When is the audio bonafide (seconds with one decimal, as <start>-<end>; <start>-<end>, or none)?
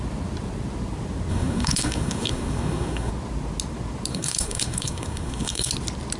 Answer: 0.0-1.3; 3.1-4.1; 5.7-6.2